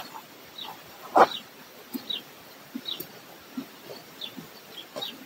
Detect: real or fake real